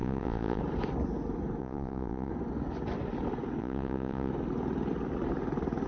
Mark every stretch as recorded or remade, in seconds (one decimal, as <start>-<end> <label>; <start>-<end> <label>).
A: 0.0-0.6 remade; 0.6-1.6 recorded; 1.6-2.3 remade; 2.3-3.6 recorded; 3.6-4.3 remade; 4.3-5.9 recorded